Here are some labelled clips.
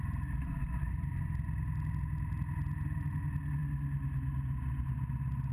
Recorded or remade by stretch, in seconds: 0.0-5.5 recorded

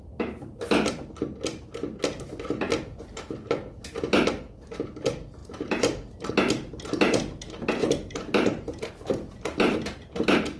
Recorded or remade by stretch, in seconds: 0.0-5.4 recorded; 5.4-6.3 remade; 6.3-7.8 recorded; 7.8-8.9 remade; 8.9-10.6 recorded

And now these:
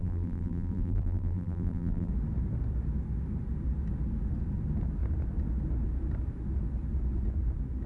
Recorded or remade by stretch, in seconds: 0.0-2.1 remade; 2.1-7.9 recorded